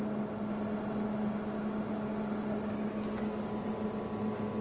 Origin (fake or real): real